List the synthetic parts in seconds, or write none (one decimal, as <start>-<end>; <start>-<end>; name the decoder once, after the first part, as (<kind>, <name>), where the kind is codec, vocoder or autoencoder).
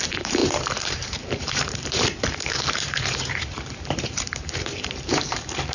0.0-5.7 (vocoder, BigVGAN v2)